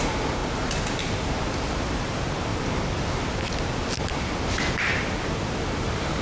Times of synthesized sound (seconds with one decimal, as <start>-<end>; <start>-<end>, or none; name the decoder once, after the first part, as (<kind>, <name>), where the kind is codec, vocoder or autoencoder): 0.0-0.4 (vocoder, BigVGAN v2); 1.0-2.5; 4.0-6.2